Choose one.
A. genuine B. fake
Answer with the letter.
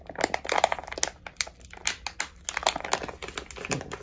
A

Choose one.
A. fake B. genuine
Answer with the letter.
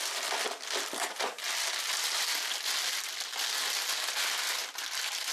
B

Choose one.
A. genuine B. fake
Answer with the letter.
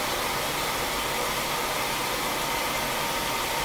A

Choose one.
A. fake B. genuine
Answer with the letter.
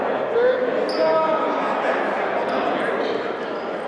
B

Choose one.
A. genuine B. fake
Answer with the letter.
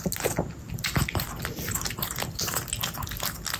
A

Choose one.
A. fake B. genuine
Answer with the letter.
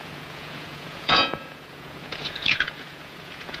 A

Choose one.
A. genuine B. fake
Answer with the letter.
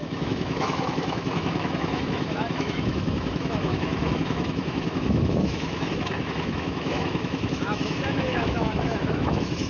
B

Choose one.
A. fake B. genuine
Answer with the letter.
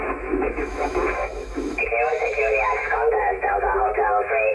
A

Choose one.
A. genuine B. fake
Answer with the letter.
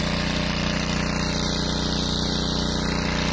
A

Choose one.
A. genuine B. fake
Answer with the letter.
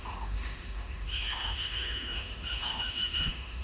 B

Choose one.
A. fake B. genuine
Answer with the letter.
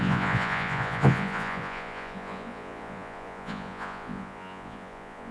A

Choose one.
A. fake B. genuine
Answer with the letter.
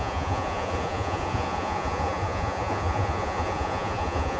A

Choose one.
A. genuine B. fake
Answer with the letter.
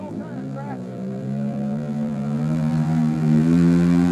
B